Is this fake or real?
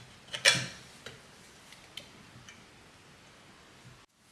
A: real